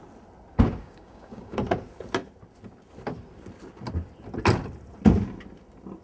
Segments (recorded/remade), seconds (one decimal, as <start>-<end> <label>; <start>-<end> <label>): 0.0-0.8 recorded; 0.8-1.6 remade; 1.6-6.0 recorded